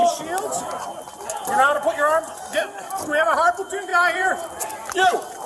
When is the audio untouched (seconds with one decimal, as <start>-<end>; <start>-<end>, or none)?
0.0-5.5